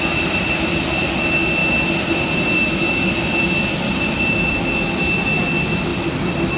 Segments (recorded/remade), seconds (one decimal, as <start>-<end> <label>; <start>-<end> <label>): 0.0-1.6 recorded; 1.6-2.7 remade; 2.7-5.9 recorded; 5.9-6.6 remade